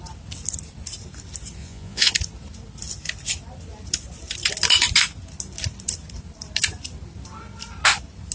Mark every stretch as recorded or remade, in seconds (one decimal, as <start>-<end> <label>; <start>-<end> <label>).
0.0-1.6 recorded; 1.6-2.1 remade; 2.1-8.3 recorded